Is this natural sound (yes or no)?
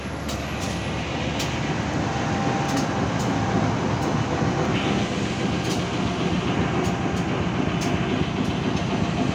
yes